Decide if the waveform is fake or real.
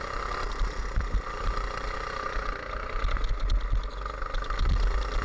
real